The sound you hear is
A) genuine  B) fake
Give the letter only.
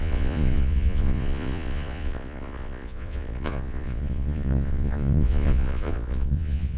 B